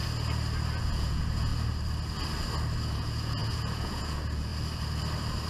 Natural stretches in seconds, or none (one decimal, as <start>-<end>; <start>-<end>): 0.0-0.8; 1.5-2.8; 4.5-5.5

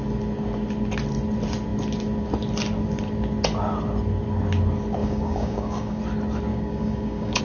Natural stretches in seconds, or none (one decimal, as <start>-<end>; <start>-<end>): 0.0-5.0; 6.0-6.5

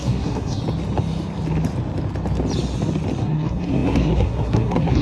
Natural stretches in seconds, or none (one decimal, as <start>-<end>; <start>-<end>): 0.6-3.2